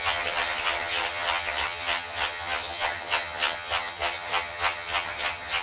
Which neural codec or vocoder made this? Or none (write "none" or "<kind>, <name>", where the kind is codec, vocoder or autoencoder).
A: vocoder, HiFi-GAN